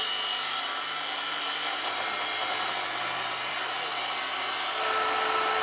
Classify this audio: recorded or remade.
recorded